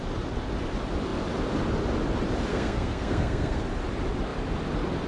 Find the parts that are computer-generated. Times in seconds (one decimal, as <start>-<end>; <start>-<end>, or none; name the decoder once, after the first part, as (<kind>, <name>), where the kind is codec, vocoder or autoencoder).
2.5-3.6 (codec, SNAC)